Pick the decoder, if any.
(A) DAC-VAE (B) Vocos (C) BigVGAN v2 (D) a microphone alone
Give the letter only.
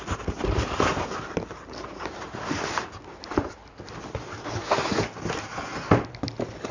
D